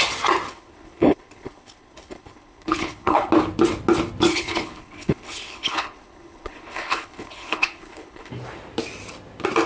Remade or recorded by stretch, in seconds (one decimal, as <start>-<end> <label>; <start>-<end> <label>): 0.0-0.5 recorded; 0.5-3.3 remade; 3.3-4.3 recorded; 4.3-8.3 remade; 8.3-9.7 recorded